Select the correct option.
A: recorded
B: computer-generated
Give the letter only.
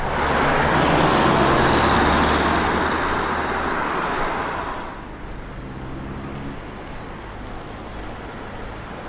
A